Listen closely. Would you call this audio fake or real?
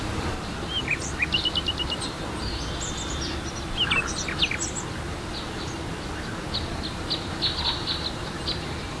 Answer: real